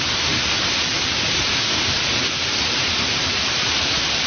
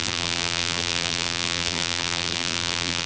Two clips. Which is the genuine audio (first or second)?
first